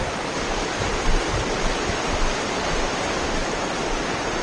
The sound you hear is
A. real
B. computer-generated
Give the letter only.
A